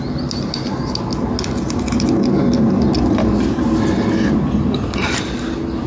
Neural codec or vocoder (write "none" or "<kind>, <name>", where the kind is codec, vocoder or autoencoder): none